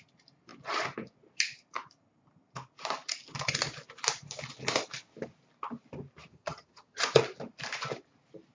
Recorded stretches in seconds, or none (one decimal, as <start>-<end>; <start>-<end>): 0.0-6.2; 7.0-8.5